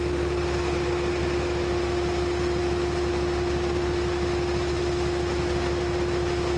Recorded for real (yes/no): yes